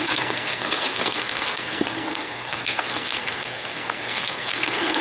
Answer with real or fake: fake